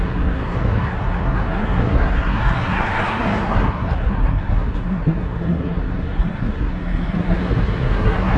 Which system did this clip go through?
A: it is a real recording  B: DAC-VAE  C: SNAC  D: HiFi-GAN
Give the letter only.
C